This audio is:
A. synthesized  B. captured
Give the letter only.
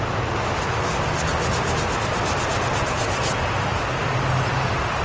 B